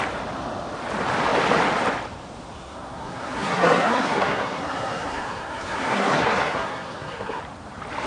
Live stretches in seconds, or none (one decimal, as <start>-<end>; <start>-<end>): 0.0-2.5; 7.4-8.1